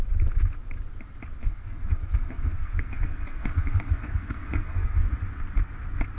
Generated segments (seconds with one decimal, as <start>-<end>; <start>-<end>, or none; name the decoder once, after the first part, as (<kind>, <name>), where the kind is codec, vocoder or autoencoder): 1.4-5.0 (codec, SNAC)